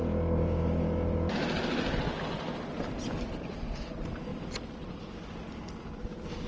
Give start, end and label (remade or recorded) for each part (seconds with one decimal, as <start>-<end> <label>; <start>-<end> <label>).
0.0-6.5 recorded